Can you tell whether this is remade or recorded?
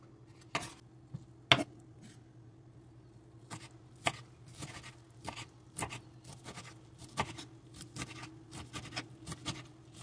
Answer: recorded